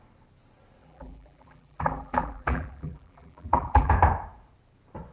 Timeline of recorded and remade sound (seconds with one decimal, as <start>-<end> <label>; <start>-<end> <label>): 0.0-0.8 recorded; 0.8-3.9 remade; 3.9-5.1 recorded